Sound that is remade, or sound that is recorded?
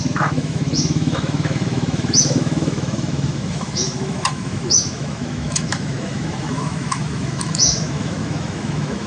remade